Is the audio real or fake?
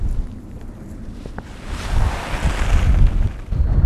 real